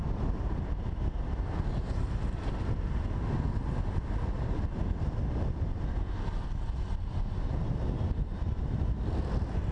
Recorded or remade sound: recorded